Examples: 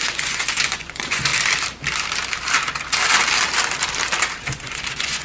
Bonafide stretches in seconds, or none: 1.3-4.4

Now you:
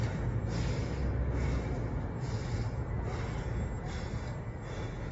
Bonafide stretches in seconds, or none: 0.0-5.1

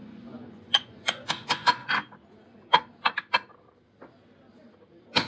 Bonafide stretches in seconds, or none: 1.9-5.3